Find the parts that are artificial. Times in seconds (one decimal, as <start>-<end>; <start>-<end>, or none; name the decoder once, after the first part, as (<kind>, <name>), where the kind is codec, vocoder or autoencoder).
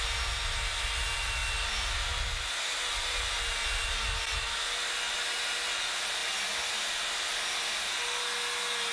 none